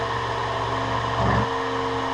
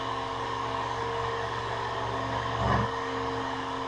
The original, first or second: first